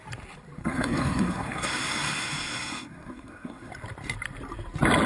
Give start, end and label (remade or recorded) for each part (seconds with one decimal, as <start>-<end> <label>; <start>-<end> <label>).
0.0-0.6 recorded; 0.6-3.7 remade; 3.7-5.1 recorded